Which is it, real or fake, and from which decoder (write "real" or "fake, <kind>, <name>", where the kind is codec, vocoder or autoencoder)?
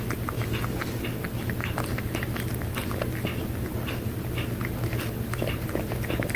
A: real